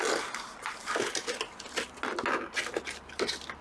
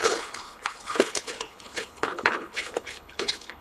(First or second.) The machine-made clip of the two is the second